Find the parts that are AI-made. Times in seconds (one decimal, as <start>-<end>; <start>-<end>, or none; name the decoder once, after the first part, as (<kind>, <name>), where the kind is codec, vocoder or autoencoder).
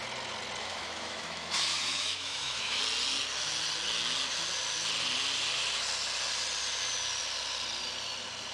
0.6-2.8 (autoencoder, DAC-VAE)